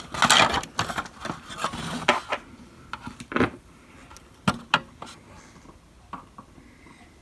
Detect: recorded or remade recorded